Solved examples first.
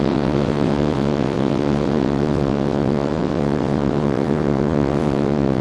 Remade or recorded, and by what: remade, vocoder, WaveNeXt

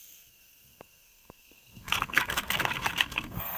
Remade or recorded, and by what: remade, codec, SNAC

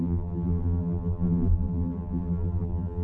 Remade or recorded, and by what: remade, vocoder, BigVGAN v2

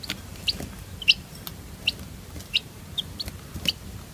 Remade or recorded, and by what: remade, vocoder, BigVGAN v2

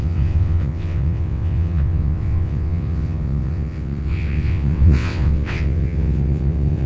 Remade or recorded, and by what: remade, vocoder, WaveNeXt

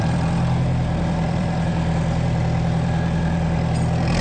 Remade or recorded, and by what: remade, vocoder, BigVGAN v2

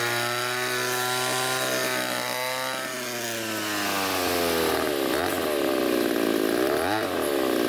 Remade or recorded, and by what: recorded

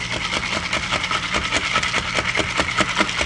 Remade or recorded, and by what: recorded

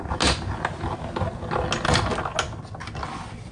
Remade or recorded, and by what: recorded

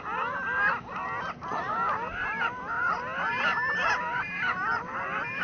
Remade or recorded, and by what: recorded